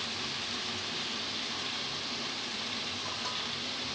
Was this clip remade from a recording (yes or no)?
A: no